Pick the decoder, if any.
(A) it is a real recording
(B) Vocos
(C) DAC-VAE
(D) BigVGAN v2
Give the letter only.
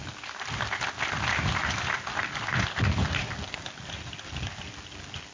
A